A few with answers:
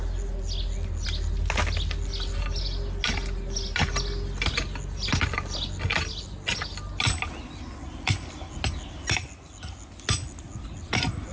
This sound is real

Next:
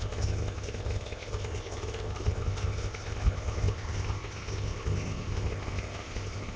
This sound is fake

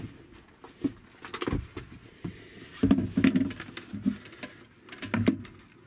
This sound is real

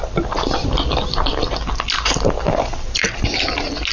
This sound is real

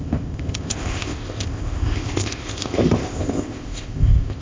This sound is fake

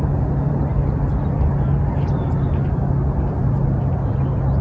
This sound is real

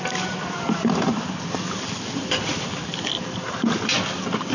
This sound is real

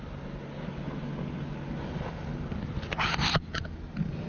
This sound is real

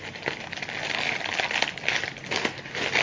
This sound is real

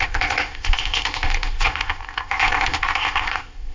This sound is fake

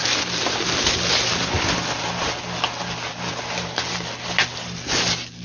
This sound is real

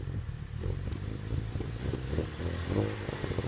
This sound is real